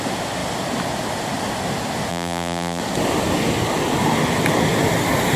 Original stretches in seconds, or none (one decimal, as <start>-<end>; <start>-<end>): 0.0-2.1; 2.8-5.4